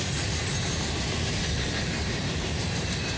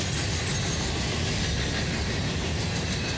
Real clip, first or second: second